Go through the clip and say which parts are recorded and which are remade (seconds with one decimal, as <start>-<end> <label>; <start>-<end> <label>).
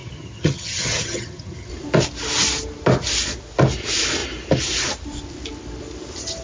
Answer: 0.0-1.7 remade; 1.7-6.4 recorded